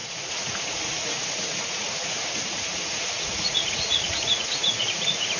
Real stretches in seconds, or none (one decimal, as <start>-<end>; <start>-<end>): none